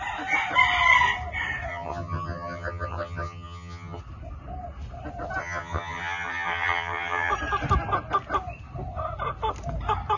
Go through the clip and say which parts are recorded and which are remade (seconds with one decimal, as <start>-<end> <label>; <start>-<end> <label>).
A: 0.0-1.7 recorded; 1.7-4.0 remade; 4.0-5.4 recorded; 5.4-7.3 remade; 7.3-10.2 recorded